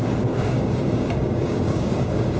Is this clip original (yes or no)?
no